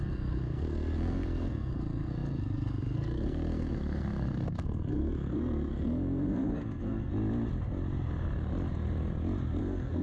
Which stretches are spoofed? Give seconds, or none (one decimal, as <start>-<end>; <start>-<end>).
0.0-7.1; 9.6-10.0